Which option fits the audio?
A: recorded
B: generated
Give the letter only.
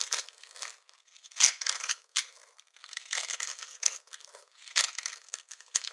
B